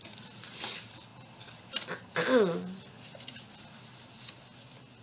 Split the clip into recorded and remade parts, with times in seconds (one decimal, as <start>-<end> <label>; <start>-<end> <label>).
0.0-5.0 recorded